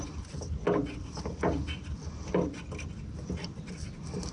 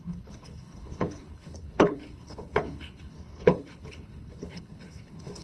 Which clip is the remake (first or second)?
second